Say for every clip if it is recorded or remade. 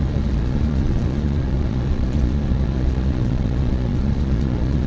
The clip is remade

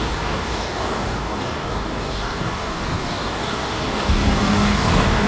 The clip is remade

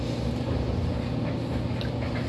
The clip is recorded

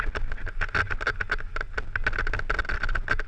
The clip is recorded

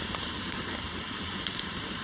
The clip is remade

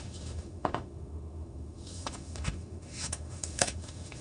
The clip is remade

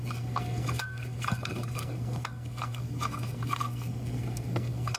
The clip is remade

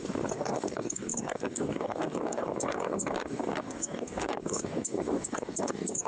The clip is remade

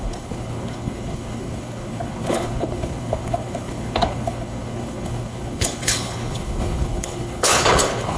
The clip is remade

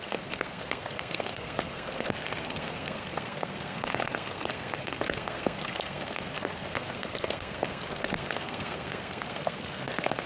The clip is remade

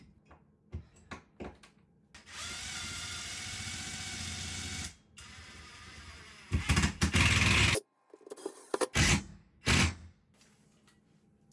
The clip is recorded